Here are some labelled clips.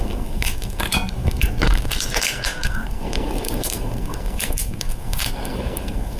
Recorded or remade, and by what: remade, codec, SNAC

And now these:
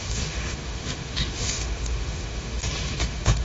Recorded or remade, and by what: remade, autoencoder, DAC-VAE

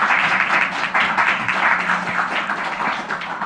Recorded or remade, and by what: recorded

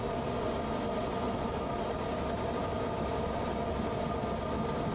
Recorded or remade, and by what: recorded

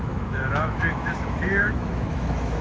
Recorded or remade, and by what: remade, autoencoder, DAC-VAE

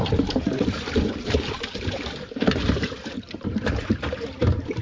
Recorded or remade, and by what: remade, vocoder, BigVGAN v2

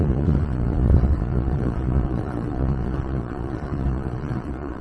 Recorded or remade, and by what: remade, vocoder, Vocos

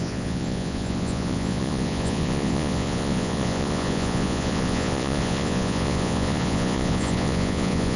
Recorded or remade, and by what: remade, vocoder, Vocos